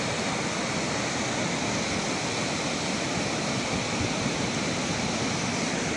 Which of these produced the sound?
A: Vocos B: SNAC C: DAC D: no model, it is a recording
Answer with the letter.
D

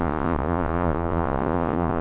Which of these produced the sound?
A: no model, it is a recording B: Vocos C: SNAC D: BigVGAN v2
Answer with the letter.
B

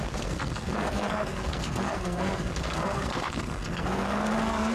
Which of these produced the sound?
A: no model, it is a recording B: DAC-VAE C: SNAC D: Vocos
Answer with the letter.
C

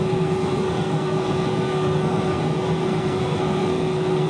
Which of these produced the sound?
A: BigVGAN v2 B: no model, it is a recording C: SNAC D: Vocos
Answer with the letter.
C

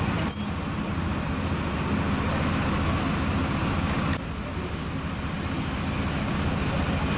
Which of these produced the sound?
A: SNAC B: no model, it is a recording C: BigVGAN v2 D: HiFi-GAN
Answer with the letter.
B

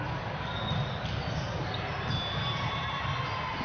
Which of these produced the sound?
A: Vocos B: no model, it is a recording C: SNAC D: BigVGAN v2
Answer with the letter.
B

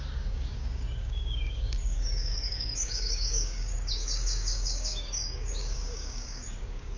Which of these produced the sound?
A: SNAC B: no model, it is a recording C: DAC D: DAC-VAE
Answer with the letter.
C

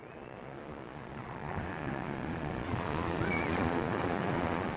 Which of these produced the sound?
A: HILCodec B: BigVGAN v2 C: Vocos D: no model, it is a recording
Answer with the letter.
C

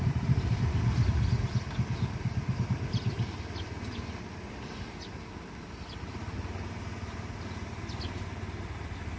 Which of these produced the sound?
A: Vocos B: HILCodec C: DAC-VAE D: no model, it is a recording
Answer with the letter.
D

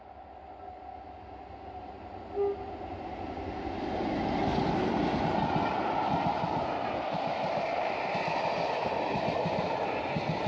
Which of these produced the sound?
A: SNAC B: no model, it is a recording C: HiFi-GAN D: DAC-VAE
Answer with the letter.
B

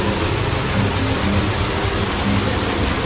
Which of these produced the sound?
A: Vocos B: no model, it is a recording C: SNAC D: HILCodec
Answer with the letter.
B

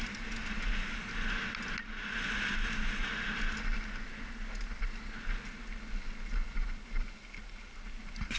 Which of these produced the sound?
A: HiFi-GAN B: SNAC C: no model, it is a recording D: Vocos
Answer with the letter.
C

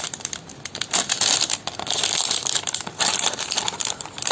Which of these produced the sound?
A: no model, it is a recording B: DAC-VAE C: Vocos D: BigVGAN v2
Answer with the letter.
A